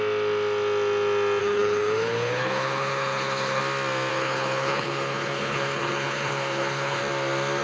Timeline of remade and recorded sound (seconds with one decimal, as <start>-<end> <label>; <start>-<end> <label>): 0.0-1.4 recorded; 1.4-3.6 remade; 3.6-4.1 recorded; 4.1-7.0 remade; 7.0-7.6 recorded